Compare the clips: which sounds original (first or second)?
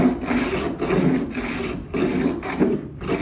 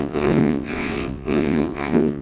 first